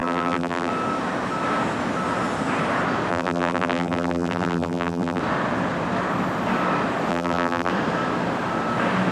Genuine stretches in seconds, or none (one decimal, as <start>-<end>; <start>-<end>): 0.7-3.1; 5.2-7.1; 7.7-9.1